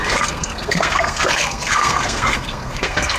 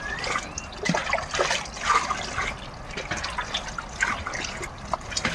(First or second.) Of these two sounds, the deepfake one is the first